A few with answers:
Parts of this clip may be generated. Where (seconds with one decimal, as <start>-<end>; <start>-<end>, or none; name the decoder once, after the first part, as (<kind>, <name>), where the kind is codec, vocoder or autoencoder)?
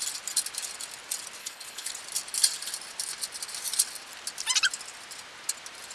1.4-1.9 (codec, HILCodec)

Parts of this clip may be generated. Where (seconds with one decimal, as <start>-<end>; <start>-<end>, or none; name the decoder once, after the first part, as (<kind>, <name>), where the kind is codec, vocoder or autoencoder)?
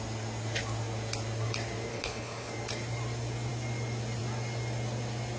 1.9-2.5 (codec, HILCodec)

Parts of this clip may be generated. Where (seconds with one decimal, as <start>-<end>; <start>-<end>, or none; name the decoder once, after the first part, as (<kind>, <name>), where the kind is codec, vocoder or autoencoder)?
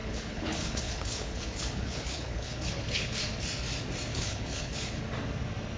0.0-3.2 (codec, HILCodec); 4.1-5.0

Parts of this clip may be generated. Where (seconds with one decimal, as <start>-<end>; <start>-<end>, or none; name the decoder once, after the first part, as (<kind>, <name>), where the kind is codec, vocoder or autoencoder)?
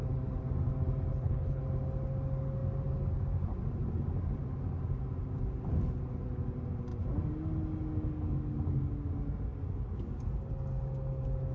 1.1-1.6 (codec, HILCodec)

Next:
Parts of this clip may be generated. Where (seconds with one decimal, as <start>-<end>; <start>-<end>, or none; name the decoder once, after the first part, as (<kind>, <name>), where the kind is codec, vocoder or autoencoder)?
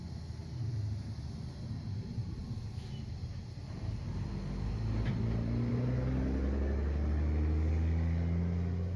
none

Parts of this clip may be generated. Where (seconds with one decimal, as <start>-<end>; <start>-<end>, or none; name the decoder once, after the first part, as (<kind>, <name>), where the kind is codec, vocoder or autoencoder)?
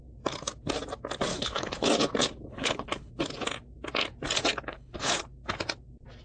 1.3-1.9 (codec, HILCodec); 2.5-3.1; 4.7-5.2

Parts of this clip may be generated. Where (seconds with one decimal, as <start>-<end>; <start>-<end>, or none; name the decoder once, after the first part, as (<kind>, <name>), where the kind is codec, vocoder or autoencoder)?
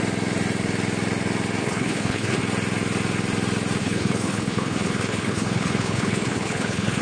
1.6-2.4 (codec, HILCodec); 3.8-7.0